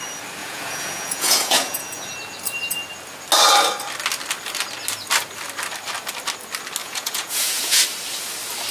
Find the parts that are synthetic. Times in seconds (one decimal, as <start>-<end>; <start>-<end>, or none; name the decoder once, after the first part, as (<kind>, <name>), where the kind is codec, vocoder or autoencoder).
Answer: 0.4-2.1 (vocoder, Vocos); 6.8-7.8